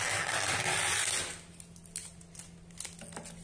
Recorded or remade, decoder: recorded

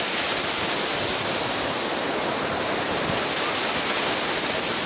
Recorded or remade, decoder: recorded